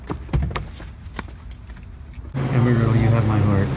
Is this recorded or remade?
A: recorded